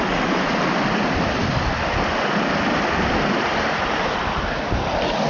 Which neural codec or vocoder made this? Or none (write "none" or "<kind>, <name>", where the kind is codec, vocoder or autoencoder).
none